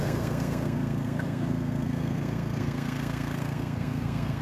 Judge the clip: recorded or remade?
remade